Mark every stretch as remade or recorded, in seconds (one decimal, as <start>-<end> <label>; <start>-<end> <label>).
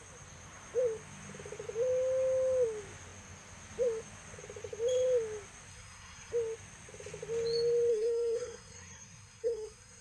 0.0-5.7 recorded; 5.7-6.3 remade; 6.3-7.9 recorded; 7.9-10.0 remade